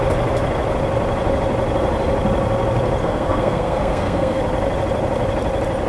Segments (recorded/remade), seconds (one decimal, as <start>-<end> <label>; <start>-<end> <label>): 0.0-3.0 recorded; 3.0-4.4 remade; 4.4-5.9 recorded